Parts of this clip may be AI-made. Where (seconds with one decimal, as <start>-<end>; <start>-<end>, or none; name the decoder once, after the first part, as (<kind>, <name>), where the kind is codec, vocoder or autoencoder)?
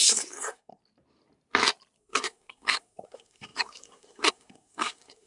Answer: 0.0-0.8 (codec, SNAC); 2.0-5.3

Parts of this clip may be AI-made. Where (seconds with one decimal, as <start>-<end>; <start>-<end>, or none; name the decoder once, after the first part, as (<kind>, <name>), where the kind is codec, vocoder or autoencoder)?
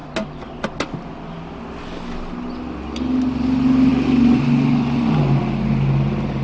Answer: none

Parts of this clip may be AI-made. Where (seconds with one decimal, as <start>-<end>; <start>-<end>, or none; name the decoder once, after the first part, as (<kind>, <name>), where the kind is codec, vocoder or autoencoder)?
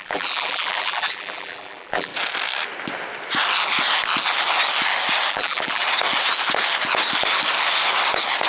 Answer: 0.0-2.1 (vocoder, BigVGAN v2); 5.3-5.8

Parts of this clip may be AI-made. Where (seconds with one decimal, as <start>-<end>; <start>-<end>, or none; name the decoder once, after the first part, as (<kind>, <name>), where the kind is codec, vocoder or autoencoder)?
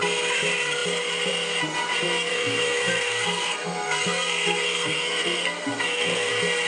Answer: 2.3-6.3 (codec, SNAC)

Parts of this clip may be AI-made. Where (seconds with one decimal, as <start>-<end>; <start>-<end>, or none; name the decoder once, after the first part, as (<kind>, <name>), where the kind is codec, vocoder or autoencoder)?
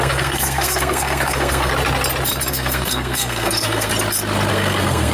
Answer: 0.0-1.7 (codec, SNAC); 2.5-3.9; 4.5-5.1